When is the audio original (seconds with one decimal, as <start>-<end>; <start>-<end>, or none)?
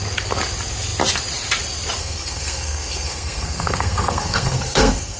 0.0-2.0